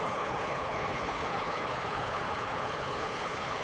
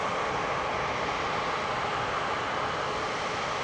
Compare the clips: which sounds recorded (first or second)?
second